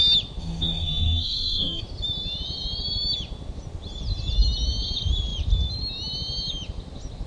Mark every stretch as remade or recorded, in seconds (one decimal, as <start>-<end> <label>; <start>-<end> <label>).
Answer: 0.0-0.4 recorded; 0.4-1.8 remade; 1.8-7.3 recorded